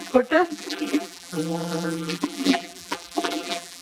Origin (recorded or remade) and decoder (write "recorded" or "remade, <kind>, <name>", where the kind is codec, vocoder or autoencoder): remade, vocoder, BigVGAN v2